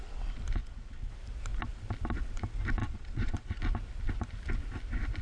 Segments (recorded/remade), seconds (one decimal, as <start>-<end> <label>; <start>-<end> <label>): 0.0-0.6 recorded; 0.6-1.1 remade; 1.1-2.8 recorded; 2.8-3.6 remade; 3.6-5.2 recorded